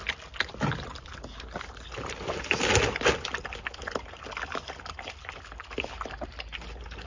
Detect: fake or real real